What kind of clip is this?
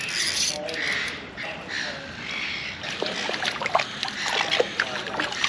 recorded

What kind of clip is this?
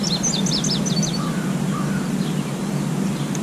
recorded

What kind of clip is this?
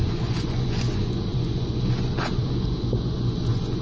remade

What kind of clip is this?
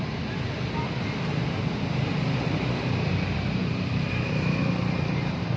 recorded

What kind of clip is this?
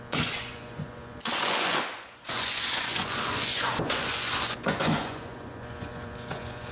remade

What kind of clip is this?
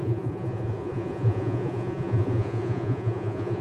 remade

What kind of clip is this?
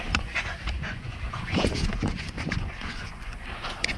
remade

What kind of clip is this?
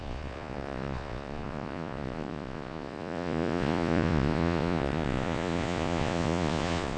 remade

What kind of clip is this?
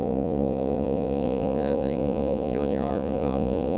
remade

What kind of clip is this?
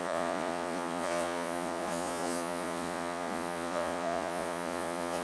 remade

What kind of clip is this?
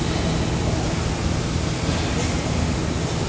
recorded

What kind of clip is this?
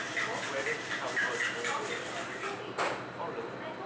recorded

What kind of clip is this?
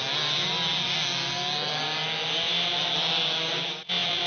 recorded